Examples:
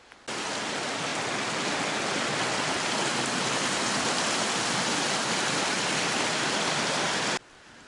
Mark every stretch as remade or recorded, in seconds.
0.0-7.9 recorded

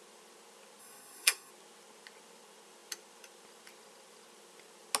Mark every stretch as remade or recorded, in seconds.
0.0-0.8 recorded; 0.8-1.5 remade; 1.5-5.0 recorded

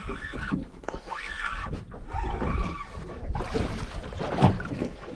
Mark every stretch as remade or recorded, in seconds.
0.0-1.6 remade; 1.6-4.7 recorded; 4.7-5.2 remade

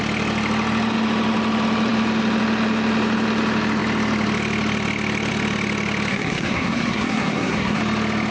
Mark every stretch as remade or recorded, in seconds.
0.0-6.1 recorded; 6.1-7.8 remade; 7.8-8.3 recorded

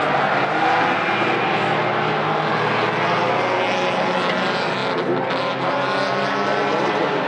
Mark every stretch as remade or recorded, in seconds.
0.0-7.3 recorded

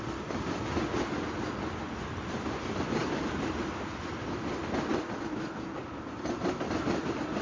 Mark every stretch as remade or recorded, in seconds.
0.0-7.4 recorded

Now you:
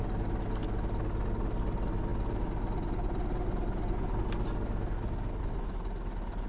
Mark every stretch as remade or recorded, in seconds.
0.0-6.5 recorded

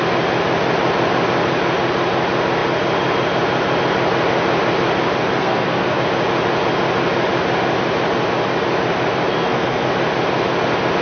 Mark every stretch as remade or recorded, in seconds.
0.0-5.4 recorded; 5.4-6.0 remade; 6.0-9.3 recorded; 9.3-9.9 remade; 9.9-11.0 recorded